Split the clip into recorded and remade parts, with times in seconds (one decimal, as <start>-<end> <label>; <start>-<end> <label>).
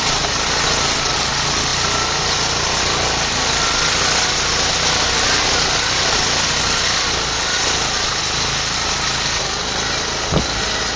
0.0-11.0 recorded